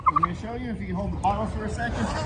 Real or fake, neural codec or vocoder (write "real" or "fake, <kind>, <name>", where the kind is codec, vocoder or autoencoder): real